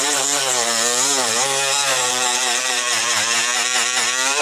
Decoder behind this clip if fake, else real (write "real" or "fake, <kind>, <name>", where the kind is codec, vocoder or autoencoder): fake, vocoder, BigVGAN v2